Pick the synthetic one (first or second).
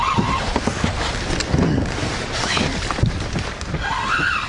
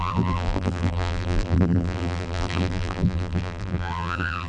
second